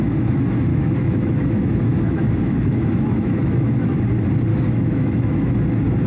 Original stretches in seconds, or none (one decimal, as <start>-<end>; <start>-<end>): 0.0-0.7; 4.0-4.5; 5.5-6.1